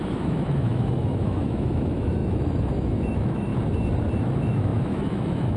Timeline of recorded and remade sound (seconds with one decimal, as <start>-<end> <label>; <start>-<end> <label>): 0.0-3.5 remade; 3.5-4.2 recorded; 4.2-5.6 remade